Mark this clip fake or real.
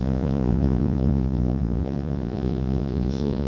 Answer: fake